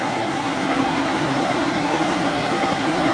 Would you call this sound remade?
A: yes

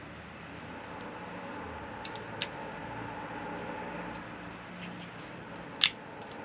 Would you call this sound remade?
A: no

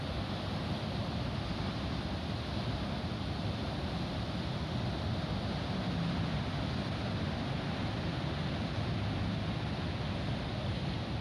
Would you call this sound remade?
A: no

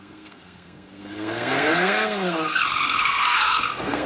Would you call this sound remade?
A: yes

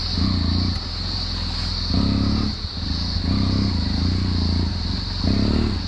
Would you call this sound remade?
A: no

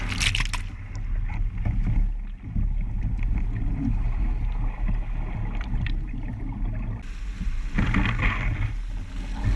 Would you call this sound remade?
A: no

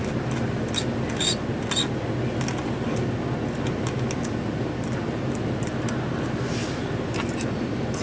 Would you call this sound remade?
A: no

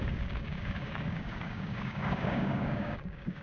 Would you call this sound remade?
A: yes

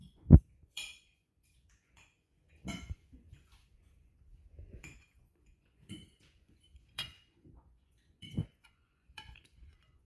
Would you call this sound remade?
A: yes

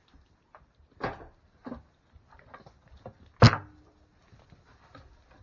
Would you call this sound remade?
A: no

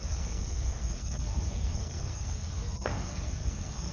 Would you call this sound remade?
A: yes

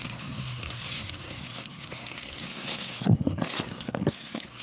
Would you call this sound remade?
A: yes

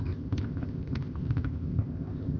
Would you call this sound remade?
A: yes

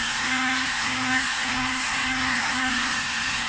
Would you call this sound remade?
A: yes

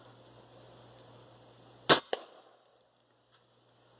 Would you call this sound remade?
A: no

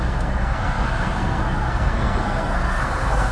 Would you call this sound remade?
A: yes